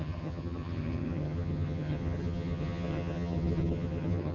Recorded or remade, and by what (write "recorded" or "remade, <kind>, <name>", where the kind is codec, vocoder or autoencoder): remade, vocoder, HiFi-GAN